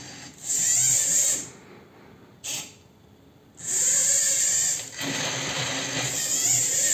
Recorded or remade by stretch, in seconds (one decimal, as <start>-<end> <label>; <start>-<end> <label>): 0.0-6.9 recorded